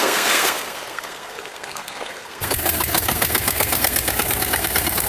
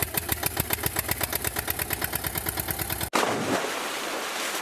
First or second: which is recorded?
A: second